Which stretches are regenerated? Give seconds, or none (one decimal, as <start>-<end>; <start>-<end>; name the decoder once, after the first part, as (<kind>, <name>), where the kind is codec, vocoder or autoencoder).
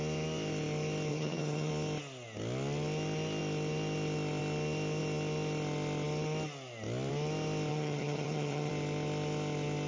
1.1-1.7 (vocoder, HiFi-GAN); 7.7-8.7